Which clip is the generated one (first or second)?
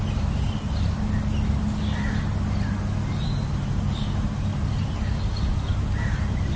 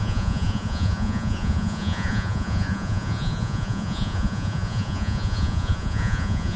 second